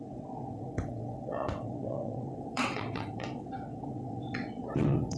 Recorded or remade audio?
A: remade